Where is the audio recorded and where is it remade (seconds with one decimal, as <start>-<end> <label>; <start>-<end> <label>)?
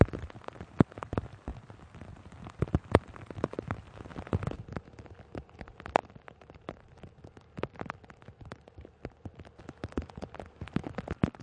0.0-11.4 recorded